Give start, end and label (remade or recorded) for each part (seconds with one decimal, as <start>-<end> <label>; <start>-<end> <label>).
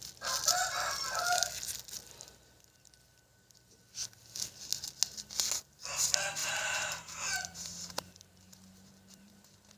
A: 0.0-6.4 recorded; 6.4-9.3 remade; 9.3-9.8 recorded